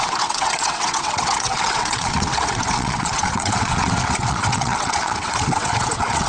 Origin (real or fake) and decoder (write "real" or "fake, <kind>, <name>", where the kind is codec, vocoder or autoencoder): fake, vocoder, WaveNeXt